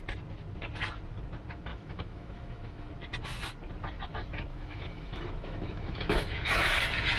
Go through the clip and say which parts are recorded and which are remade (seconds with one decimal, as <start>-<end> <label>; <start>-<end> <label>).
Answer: 0.0-1.7 recorded; 1.7-2.9 remade; 2.9-4.5 recorded; 4.5-6.8 remade; 6.8-7.2 recorded